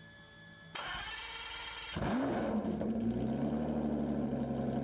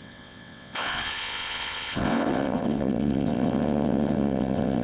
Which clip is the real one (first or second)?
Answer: first